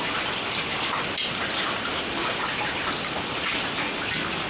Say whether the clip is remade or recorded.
recorded